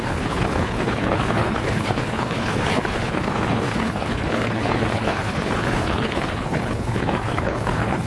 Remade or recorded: remade